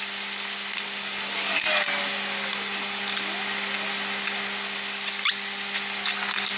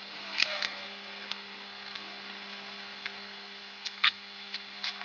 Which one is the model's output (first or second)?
second